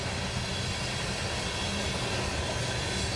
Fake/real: real